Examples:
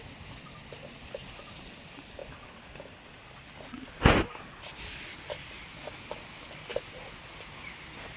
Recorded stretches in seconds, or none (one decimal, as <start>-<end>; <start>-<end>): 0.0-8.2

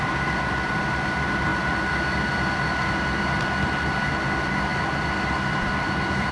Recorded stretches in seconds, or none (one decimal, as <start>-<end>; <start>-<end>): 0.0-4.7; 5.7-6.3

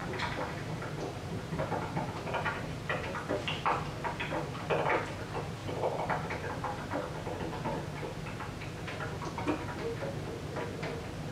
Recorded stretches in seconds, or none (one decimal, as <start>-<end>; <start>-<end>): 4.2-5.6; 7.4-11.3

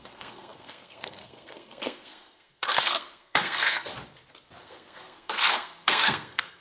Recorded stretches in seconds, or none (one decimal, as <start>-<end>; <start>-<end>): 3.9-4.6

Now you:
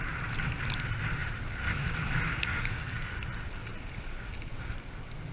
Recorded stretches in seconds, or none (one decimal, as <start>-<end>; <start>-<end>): 0.0-2.5; 3.1-5.3